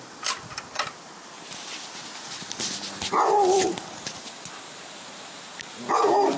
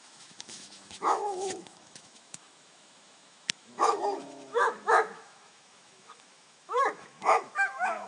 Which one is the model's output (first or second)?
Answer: second